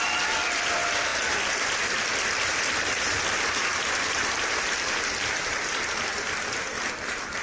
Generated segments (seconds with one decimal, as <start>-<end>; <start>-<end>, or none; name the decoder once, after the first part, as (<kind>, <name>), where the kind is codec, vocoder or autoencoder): 0.0-7.4 (vocoder, BigVGAN v2)

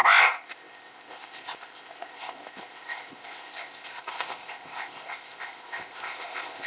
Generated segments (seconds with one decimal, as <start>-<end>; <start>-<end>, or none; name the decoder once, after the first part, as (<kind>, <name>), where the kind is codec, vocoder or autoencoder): 0.0-6.7 (codec, ZipCodec)